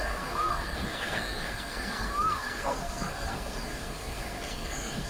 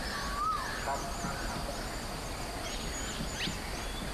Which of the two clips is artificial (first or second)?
first